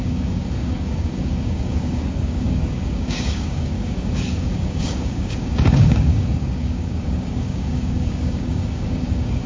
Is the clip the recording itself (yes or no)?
no